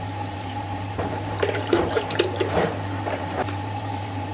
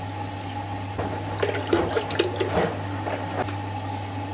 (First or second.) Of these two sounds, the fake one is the first